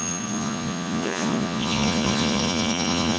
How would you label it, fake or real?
fake